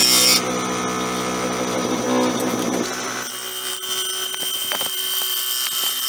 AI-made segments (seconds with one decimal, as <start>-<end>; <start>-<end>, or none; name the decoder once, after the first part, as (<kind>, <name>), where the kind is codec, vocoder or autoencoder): none